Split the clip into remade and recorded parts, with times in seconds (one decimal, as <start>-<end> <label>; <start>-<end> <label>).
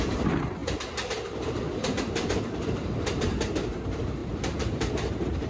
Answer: 0.0-5.5 remade